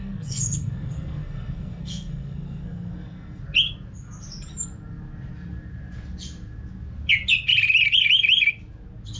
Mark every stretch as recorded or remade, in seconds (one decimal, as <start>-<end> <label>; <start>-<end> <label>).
0.0-3.4 remade; 3.4-9.2 recorded